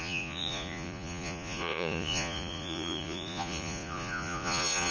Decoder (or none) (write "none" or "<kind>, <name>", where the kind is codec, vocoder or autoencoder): vocoder, Vocos